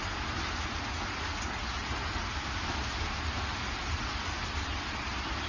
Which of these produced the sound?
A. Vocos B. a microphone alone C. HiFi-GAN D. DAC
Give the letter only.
B